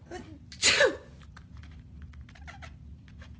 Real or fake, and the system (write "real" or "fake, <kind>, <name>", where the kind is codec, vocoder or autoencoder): real